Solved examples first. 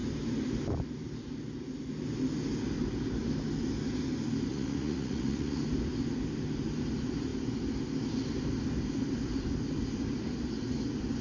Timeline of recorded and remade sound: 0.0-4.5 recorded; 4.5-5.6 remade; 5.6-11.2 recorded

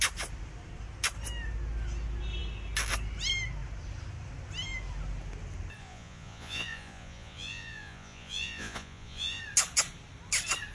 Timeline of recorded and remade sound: 0.0-5.8 recorded; 5.8-9.4 remade; 9.4-10.7 recorded

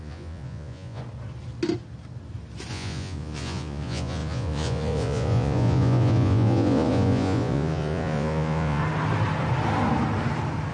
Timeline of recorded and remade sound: 0.0-1.0 remade; 1.0-2.7 recorded; 2.7-8.8 remade; 8.8-10.7 recorded